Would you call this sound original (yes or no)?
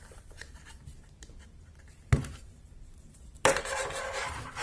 no